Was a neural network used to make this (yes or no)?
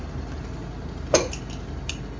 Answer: no